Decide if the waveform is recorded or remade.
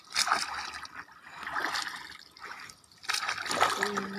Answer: recorded